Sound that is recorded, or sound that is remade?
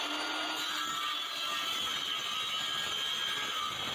recorded